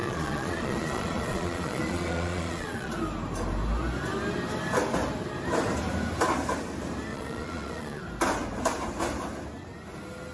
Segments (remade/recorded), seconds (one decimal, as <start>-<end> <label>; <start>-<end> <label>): 0.0-2.9 remade; 2.9-7.1 recorded; 7.1-8.0 remade; 8.0-10.3 recorded